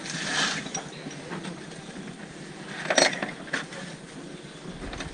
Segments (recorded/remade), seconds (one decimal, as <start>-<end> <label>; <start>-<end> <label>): 0.0-5.1 recorded